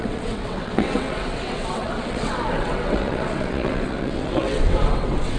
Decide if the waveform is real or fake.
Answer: fake